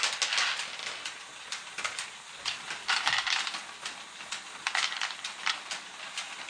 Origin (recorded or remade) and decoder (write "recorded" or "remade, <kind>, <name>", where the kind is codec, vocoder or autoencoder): recorded